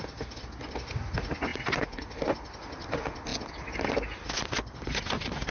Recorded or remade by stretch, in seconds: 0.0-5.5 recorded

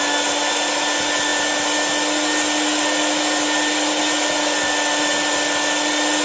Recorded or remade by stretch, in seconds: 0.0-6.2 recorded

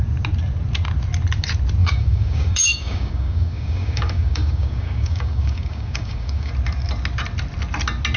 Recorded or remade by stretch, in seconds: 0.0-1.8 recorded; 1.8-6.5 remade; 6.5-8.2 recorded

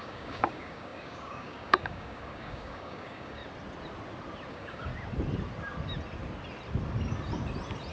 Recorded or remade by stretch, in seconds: 0.0-3.4 remade; 3.4-4.5 recorded; 4.5-4.9 remade; 4.9-7.9 recorded

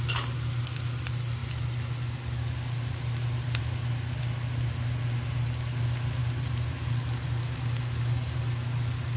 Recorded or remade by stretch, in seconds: 0.0-9.2 recorded

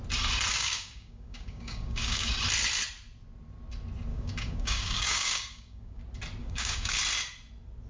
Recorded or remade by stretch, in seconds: 0.0-0.5 recorded; 0.5-2.3 remade; 2.3-4.1 recorded; 4.1-6.0 remade; 6.0-6.4 recorded; 6.4-7.0 remade; 7.0-7.9 recorded

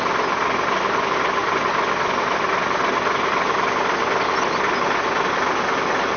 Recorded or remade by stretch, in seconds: 0.0-6.2 recorded